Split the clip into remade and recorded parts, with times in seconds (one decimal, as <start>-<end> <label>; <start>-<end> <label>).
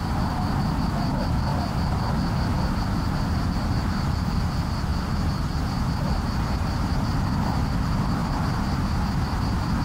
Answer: 0.0-1.5 recorded; 1.5-3.5 remade; 3.5-4.9 recorded; 4.9-6.9 remade; 6.9-8.2 recorded; 8.2-9.0 remade; 9.0-9.8 recorded